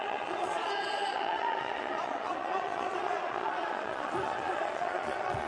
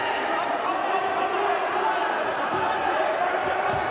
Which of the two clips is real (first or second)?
second